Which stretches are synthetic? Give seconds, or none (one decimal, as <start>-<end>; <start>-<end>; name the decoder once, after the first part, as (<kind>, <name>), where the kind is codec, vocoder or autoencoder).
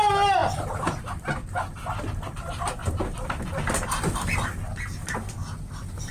none